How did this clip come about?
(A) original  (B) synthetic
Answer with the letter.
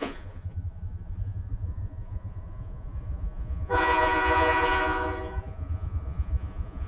B